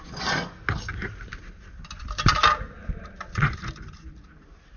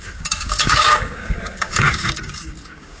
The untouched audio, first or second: first